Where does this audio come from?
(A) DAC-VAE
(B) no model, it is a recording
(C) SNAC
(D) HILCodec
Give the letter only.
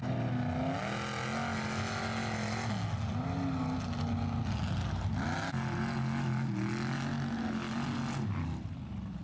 B